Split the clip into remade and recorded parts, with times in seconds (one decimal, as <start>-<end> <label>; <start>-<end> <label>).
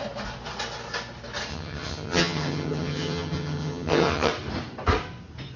0.0-1.5 recorded; 1.5-4.3 remade; 4.3-5.6 recorded